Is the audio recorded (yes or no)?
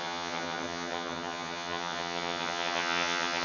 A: no